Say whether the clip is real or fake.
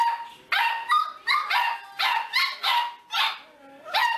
real